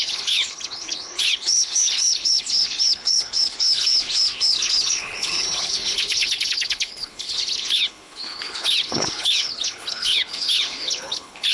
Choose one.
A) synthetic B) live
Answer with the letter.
A